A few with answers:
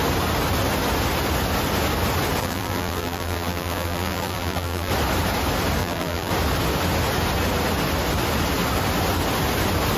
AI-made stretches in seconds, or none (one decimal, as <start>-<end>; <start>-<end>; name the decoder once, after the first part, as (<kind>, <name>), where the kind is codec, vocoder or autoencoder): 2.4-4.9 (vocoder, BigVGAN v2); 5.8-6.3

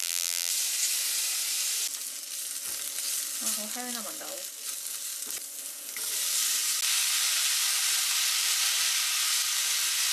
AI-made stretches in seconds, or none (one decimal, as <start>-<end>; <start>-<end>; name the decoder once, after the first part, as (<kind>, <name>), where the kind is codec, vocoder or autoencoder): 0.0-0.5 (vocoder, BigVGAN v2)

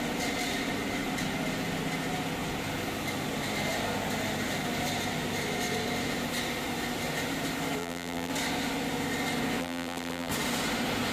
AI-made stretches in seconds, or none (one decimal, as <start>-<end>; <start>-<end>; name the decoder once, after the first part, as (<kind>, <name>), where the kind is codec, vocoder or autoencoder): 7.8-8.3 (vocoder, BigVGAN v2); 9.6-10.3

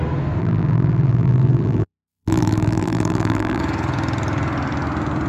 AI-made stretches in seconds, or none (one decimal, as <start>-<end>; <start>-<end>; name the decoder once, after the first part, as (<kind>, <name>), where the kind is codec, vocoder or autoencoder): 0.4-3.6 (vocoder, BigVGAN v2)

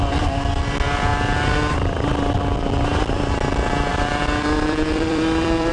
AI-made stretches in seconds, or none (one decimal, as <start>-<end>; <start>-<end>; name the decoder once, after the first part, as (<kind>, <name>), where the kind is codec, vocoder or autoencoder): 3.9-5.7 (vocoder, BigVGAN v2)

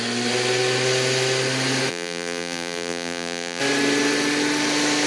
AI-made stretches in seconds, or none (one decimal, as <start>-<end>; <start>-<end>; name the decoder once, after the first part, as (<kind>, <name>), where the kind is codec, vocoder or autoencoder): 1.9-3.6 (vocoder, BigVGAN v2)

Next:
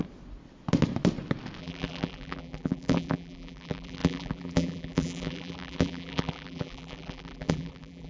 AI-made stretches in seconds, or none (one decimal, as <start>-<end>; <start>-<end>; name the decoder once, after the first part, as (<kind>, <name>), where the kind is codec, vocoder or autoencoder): 1.6-8.1 (vocoder, BigVGAN v2)

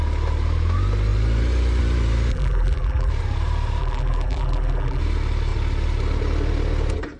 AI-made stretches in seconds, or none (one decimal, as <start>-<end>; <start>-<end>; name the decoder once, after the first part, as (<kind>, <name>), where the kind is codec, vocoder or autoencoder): 2.3-3.1 (vocoder, BigVGAN v2); 3.8-5.0